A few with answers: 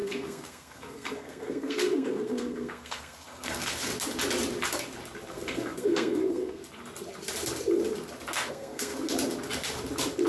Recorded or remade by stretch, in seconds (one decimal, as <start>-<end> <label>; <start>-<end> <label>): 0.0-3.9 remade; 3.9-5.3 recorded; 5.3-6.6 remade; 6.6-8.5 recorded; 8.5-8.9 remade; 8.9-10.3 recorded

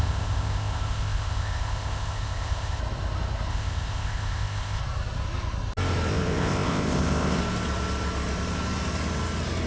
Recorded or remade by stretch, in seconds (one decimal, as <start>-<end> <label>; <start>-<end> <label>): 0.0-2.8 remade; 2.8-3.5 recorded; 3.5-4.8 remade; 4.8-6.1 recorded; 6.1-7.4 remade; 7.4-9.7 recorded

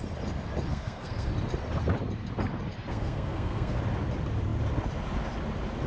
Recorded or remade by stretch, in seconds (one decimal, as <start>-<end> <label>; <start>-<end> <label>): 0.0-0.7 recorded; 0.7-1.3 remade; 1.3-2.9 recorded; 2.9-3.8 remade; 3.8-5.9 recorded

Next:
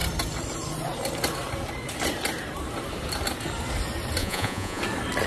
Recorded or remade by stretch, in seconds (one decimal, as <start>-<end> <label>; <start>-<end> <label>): 0.0-4.2 recorded; 4.2-4.8 remade; 4.8-5.3 recorded

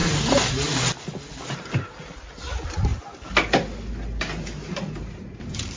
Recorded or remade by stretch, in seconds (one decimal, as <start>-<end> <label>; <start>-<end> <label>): 0.0-5.8 recorded